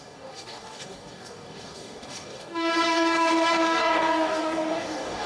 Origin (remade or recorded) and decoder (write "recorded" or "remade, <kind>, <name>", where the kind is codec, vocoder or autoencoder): remade, codec, DAC